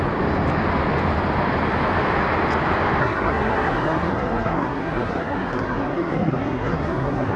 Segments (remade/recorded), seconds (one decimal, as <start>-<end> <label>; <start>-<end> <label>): 0.0-3.0 recorded; 3.0-7.4 remade